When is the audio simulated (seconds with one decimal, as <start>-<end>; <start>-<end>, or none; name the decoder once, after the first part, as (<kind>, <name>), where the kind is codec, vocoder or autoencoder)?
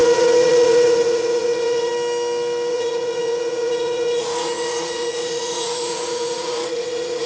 0.0-1.9 (vocoder, Vocos); 2.7-7.3